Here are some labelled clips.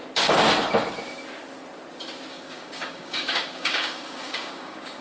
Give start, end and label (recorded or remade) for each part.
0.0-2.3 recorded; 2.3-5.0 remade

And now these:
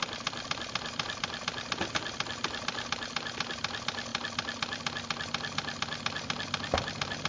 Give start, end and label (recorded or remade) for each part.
0.0-7.3 recorded

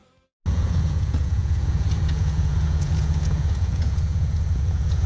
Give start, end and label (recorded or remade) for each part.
0.0-0.5 recorded; 0.5-5.1 remade

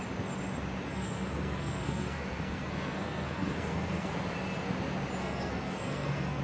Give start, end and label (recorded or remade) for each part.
0.0-0.9 recorded; 0.9-4.1 remade; 4.1-5.2 recorded; 5.2-6.4 remade

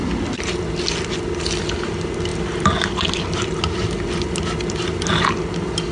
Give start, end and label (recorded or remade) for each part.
0.0-5.9 recorded

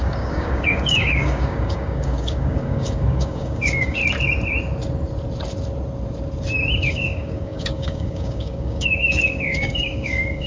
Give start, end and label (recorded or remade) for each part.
0.0-4.0 remade; 4.0-6.9 recorded; 6.9-10.5 remade